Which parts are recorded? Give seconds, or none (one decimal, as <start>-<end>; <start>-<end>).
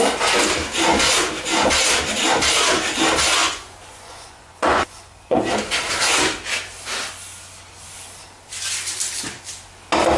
0.0-3.4; 5.4-10.2